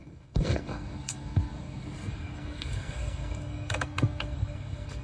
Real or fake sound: fake